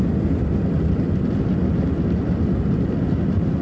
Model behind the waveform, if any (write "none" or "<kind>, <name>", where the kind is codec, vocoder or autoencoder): none